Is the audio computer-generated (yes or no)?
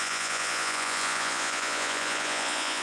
yes